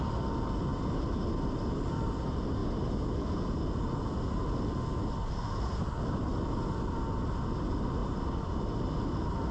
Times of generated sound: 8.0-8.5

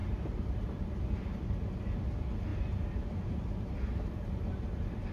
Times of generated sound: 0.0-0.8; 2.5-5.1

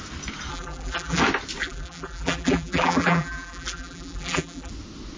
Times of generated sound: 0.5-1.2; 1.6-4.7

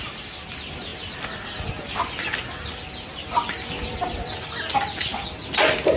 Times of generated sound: none